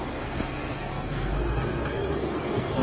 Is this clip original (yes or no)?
no